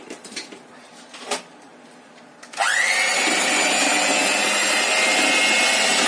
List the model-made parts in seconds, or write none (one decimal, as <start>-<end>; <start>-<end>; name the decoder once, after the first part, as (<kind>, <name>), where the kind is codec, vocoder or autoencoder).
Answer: none